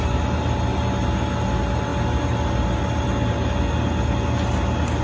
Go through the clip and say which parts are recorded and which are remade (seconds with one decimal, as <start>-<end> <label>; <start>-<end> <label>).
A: 0.0-5.0 recorded